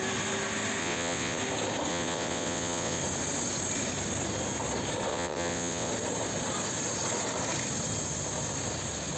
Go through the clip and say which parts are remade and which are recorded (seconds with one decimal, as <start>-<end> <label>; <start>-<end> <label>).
0.0-0.8 recorded; 0.8-1.4 remade; 1.4-1.9 recorded; 1.9-3.0 remade; 3.0-5.1 recorded; 5.1-5.9 remade; 5.9-9.2 recorded